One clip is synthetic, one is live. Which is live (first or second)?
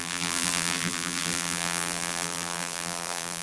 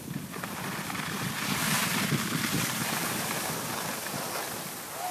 second